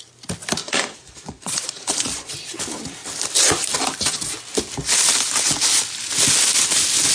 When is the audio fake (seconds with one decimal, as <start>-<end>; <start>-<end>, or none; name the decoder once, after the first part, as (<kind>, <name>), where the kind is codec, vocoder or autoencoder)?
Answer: 0.6-2.3 (vocoder, Vocos)